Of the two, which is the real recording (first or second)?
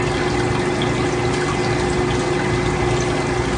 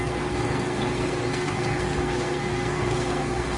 first